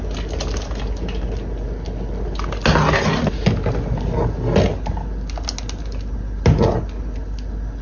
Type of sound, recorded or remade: recorded